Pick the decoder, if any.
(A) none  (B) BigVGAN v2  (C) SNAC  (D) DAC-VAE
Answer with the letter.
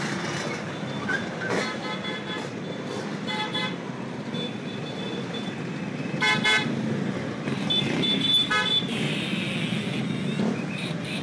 A